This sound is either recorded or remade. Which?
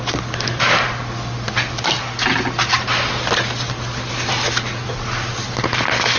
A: recorded